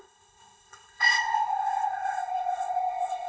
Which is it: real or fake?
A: fake